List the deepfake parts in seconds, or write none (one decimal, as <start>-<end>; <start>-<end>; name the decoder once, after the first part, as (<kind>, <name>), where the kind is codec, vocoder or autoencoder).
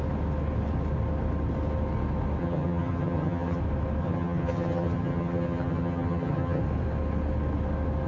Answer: 2.4-3.6 (vocoder, HiFi-GAN); 4.0-6.6